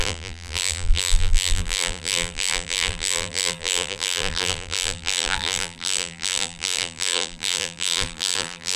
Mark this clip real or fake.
fake